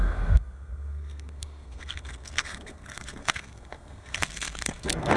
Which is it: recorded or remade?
remade